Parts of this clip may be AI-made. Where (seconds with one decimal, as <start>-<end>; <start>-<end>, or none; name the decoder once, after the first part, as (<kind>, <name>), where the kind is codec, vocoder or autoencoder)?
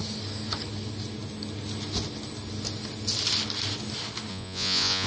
4.3-5.1 (vocoder, Vocos)